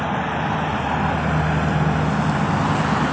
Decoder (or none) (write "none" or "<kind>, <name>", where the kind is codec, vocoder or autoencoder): none